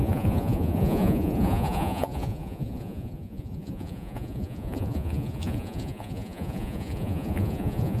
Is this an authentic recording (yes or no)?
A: no